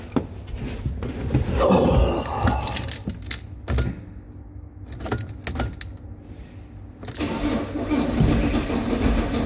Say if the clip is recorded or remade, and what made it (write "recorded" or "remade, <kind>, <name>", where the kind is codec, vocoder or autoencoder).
recorded